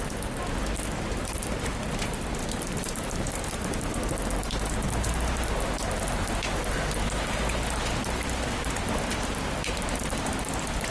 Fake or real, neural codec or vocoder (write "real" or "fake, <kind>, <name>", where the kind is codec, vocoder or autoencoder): real